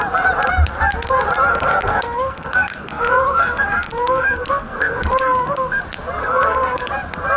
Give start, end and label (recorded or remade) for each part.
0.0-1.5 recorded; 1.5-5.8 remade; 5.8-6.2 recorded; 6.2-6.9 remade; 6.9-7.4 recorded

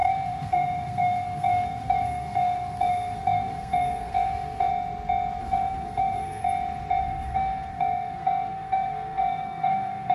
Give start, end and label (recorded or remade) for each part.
0.0-4.7 remade; 4.7-5.4 recorded; 5.4-6.4 remade; 6.4-7.0 recorded; 7.0-10.1 remade

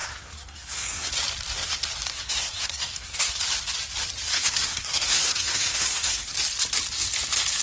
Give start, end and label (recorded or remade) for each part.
0.0-1.1 remade; 1.1-2.1 recorded; 2.1-3.4 remade; 3.4-4.3 recorded; 4.3-6.3 remade; 6.3-7.6 recorded

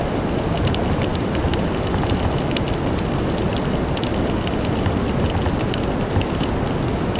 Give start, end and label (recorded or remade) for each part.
0.0-7.2 recorded

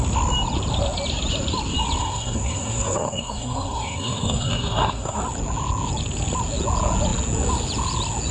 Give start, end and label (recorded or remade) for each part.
0.0-2.0 recorded; 2.0-5.2 remade; 5.2-8.3 recorded

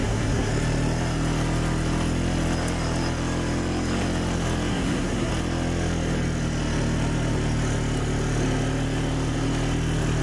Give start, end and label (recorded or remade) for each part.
0.0-0.5 remade; 0.5-4.7 recorded; 4.7-5.3 remade; 5.3-10.2 recorded

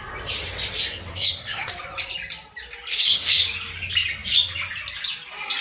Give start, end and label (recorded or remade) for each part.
0.0-1.1 recorded; 1.1-1.7 remade; 1.7-2.9 recorded; 2.9-3.4 remade; 3.4-5.6 recorded

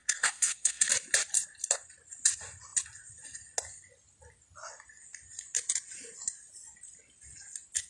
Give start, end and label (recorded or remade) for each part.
0.0-0.9 remade; 0.9-7.9 recorded